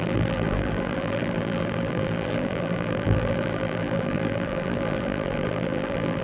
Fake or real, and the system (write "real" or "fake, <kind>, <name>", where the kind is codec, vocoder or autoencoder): fake, vocoder, BigVGAN v2